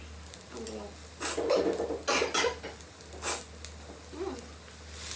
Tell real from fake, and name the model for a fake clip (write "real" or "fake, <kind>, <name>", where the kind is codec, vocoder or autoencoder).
real